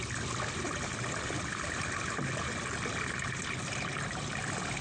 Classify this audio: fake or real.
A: real